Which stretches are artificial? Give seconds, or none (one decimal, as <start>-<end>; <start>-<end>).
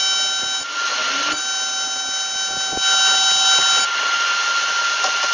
0.9-1.4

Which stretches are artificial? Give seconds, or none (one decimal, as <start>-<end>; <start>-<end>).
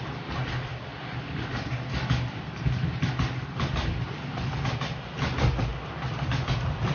0.7-4.4; 5.7-6.9